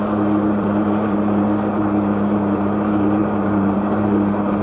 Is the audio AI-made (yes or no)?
yes